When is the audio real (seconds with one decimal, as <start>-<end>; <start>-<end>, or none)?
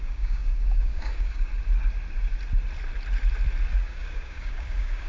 1.5-3.7